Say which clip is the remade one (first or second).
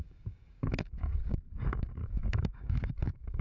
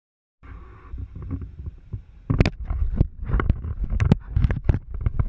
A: first